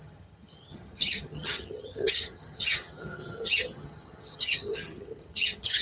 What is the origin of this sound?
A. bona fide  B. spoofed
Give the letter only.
B